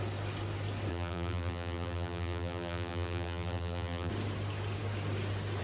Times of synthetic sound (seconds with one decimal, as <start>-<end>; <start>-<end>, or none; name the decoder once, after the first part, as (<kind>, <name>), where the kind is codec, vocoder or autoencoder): 0.9-4.1 (vocoder, BigVGAN v2)